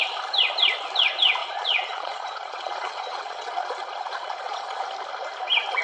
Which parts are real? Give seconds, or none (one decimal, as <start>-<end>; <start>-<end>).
0.0-1.4; 4.8-5.8